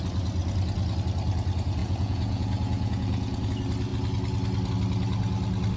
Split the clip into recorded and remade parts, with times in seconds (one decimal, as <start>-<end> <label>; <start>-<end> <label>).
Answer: 0.0-1.8 recorded; 1.8-3.5 remade; 3.5-5.8 recorded